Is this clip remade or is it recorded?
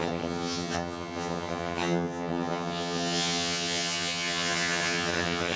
remade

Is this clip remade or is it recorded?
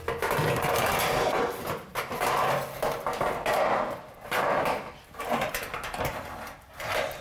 recorded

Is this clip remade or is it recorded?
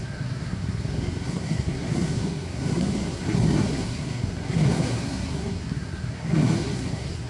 remade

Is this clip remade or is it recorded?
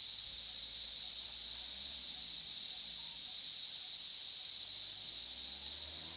recorded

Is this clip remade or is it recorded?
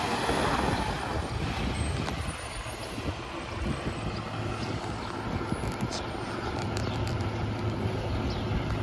recorded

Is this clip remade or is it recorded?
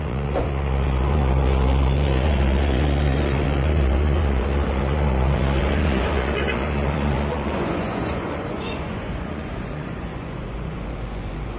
remade